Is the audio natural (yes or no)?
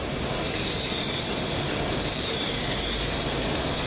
yes